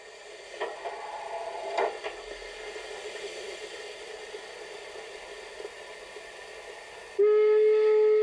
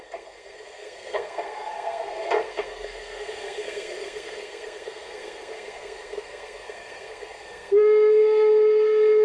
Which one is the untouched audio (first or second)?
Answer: first